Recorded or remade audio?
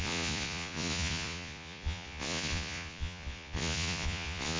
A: remade